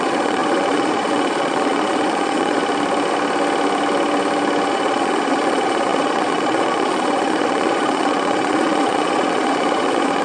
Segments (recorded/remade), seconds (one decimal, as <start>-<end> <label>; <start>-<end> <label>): 0.0-2.6 remade; 2.6-4.7 recorded; 4.7-10.2 remade